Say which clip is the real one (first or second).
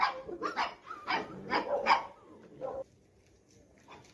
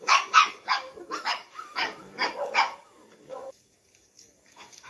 first